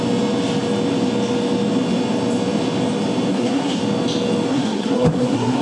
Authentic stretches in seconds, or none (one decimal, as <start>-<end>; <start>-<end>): 0.0-3.3; 3.8-4.5